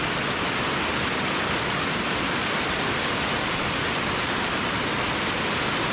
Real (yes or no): yes